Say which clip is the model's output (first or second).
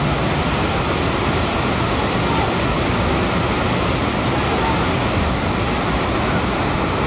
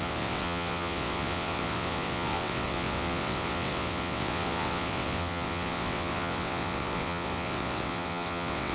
second